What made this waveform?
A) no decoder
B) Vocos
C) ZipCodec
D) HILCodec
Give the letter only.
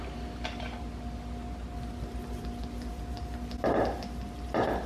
A